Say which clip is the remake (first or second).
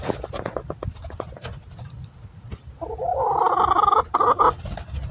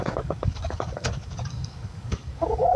second